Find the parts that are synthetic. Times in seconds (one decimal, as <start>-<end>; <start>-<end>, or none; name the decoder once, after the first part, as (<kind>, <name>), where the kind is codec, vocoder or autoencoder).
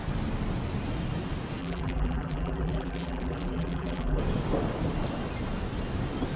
1.6-4.2 (vocoder, BigVGAN v2)